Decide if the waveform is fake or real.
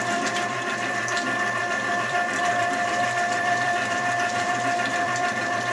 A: fake